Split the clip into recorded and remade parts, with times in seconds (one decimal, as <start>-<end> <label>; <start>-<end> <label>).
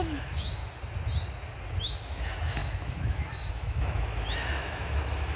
0.0-0.6 remade; 0.6-1.8 recorded; 1.8-5.4 remade